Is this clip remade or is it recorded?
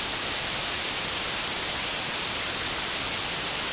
recorded